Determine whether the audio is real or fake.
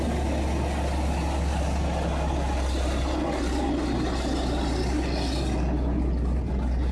real